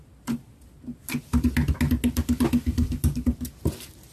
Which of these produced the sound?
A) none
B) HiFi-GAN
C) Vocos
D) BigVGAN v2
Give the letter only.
A